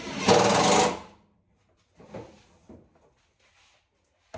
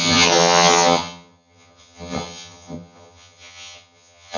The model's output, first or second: second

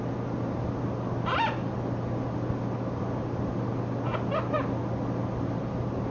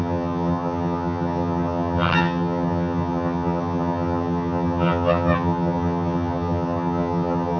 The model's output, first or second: second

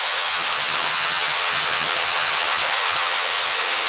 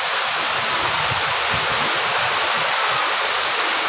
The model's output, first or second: first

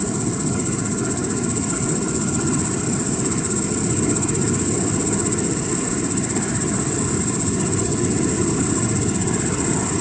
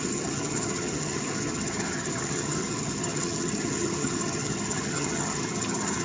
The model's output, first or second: second